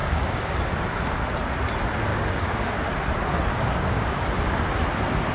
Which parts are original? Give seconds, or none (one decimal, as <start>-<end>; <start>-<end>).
0.6-2.1; 2.7-3.5; 4.2-5.3